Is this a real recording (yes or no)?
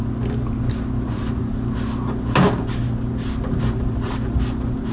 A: yes